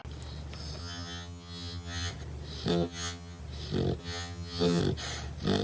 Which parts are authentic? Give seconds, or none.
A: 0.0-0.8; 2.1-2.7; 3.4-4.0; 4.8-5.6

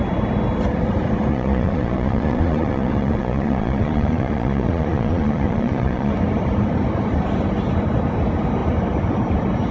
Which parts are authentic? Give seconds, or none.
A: 0.0-1.3; 6.1-9.7

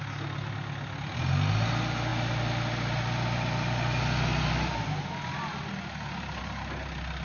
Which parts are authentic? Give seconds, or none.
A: 0.0-7.2

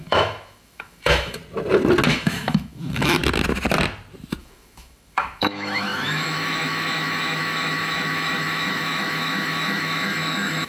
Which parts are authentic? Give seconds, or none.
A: 1.4-2.1; 3.2-4.4